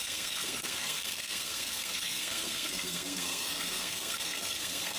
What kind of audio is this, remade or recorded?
remade